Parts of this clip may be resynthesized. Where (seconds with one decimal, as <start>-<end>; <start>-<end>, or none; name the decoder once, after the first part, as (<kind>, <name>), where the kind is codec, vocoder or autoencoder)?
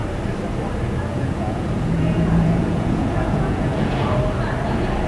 1.1-4.2 (vocoder, Vocos)